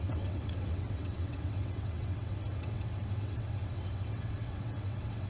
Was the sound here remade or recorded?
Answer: remade